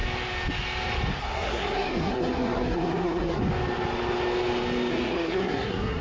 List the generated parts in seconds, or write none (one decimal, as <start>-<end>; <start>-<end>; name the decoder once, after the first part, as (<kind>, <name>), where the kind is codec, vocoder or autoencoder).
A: 1.2-3.4 (codec, SNAC); 4.9-6.0